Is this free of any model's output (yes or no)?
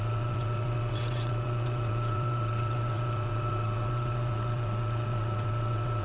no